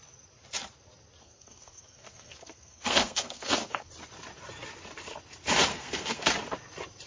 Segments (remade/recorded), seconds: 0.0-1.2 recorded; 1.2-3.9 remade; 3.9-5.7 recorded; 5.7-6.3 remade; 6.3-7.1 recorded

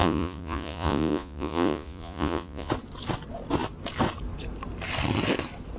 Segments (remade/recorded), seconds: 0.0-2.7 remade; 2.7-5.8 recorded

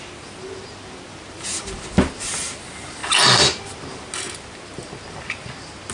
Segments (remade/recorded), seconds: 0.0-5.9 recorded

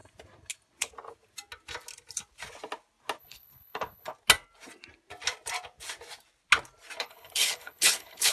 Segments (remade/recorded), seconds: 0.0-3.2 recorded; 3.2-4.1 remade; 4.1-7.0 recorded; 7.0-8.3 remade

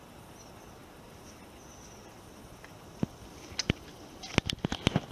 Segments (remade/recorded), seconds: 0.0-5.1 recorded

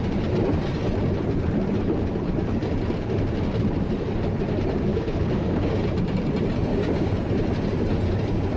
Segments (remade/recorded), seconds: 0.0-4.9 recorded; 4.9-5.8 remade; 5.8-6.7 recorded; 6.7-7.2 remade; 7.2-8.6 recorded

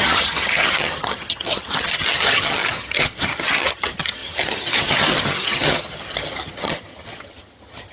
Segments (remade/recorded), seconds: 0.0-7.9 remade